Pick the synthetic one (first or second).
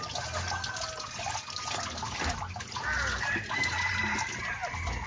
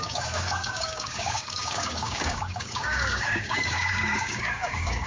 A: second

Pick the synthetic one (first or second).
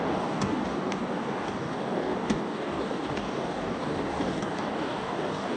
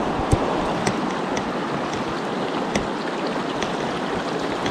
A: first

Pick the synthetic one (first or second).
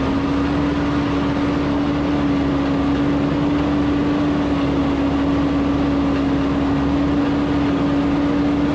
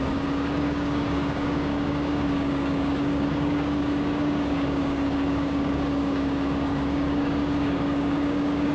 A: second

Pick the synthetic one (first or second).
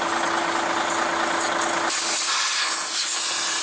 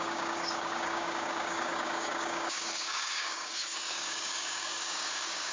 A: second